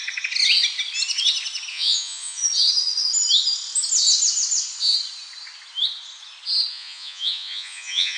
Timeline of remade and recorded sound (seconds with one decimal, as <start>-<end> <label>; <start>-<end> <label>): 0.0-1.7 recorded; 1.7-2.4 remade; 2.4-6.7 recorded; 6.7-8.2 remade